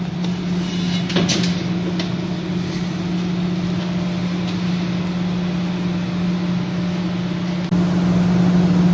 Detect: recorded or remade recorded